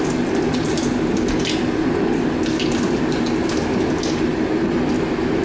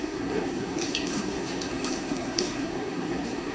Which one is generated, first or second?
second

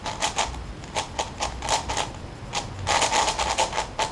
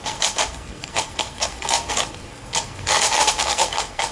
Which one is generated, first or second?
second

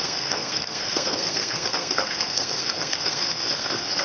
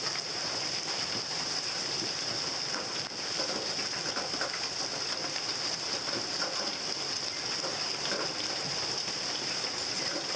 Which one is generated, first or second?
first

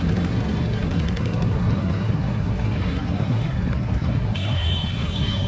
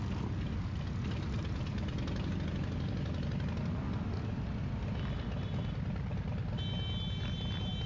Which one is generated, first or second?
first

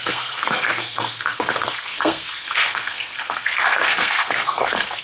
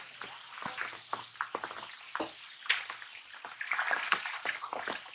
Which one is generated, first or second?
first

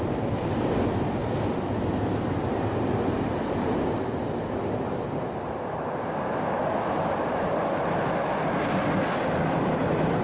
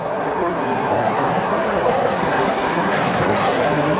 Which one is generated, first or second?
second